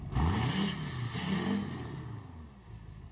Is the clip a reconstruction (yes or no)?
no